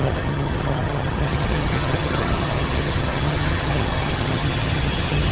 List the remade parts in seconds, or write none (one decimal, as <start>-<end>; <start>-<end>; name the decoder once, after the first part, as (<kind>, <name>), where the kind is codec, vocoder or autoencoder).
0.0-5.3 (vocoder, HiFi-GAN)